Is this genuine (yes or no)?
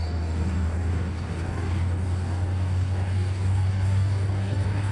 no